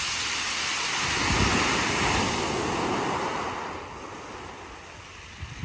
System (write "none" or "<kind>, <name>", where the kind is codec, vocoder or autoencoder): none